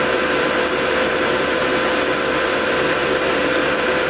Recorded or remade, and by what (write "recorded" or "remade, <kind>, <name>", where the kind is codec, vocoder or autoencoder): remade, vocoder, BigVGAN v2